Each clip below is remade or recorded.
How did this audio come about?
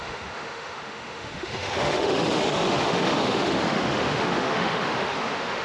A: remade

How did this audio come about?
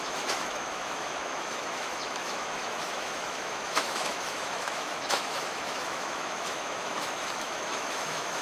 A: remade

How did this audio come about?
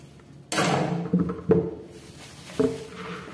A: recorded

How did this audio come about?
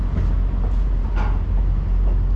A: recorded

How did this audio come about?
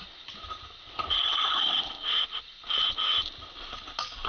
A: recorded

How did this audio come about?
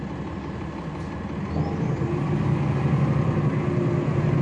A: recorded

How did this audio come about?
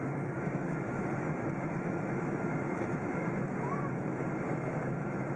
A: remade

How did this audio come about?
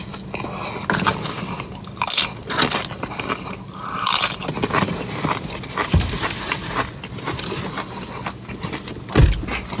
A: recorded